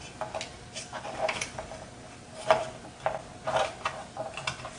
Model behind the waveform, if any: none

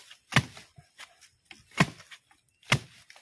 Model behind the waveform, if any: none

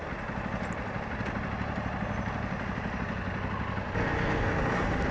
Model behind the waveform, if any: none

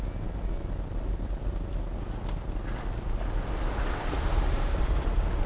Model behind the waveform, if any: none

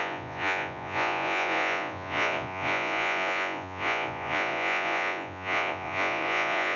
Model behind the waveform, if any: vocoder, Vocos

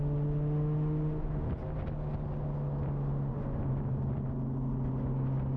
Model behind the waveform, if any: none